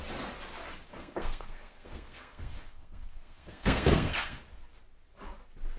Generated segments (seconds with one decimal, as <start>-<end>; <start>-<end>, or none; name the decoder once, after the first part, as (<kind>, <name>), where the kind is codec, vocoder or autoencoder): 0.9-4.4 (codec, SNAC)